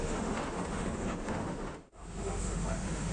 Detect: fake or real fake